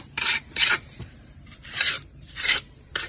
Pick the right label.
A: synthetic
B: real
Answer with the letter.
A